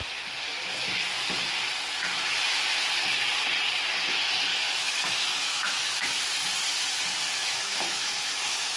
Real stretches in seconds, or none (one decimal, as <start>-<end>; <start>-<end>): 0.0-4.5; 6.2-7.4